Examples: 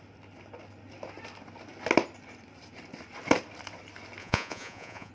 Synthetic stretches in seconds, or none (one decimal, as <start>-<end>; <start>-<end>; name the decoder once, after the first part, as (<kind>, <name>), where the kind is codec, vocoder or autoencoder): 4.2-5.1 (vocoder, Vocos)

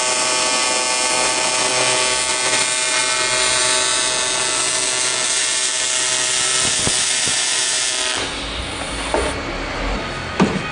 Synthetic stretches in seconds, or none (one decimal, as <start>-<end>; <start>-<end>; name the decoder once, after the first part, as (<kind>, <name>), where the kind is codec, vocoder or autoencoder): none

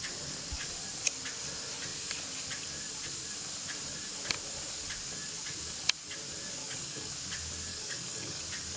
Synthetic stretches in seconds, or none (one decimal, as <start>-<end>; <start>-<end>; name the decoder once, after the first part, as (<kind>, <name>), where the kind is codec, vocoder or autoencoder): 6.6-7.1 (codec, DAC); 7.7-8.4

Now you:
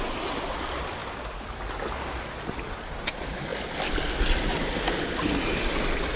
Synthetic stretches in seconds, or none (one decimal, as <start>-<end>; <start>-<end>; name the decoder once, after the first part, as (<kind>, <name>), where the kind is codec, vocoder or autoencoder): 0.0-1.0 (vocoder, BigVGAN v2); 2.7-3.5; 5.7-6.2